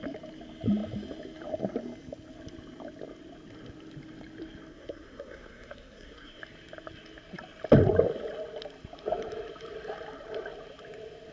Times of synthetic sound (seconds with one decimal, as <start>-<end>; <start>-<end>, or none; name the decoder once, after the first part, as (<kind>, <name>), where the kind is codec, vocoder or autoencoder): 4.7-6.4 (codec, SNAC)